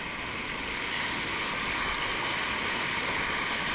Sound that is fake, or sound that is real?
real